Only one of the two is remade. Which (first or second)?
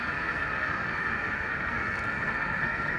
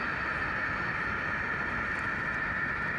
first